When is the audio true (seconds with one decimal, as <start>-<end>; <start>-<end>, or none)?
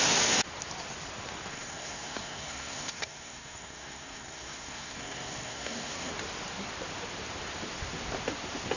0.0-1.5; 6.1-8.8